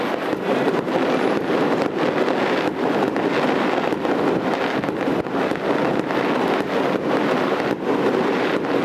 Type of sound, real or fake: real